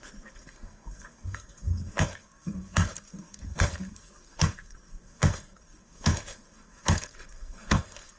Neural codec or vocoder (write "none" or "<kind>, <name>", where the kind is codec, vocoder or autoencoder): codec, SNAC